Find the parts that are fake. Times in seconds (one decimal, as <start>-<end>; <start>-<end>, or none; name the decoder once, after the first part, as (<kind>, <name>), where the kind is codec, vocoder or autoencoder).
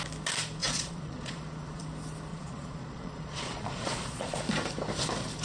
0.6-1.8 (vocoder, Vocos); 2.3-4.4